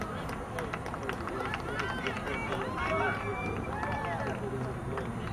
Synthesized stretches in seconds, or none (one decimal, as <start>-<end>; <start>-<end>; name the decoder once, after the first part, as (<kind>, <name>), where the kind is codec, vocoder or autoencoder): 3.3-4.0 (vocoder, BigVGAN v2)